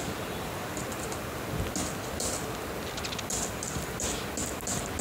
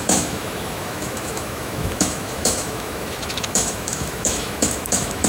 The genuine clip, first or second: first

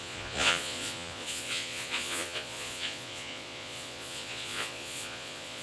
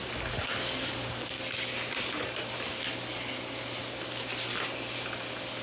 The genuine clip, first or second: second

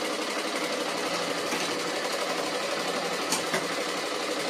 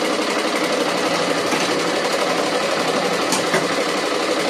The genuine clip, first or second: first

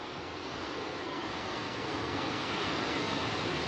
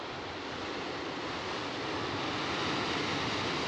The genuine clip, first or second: second